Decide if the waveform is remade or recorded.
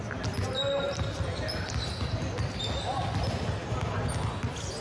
recorded